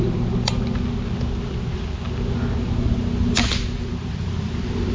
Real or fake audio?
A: real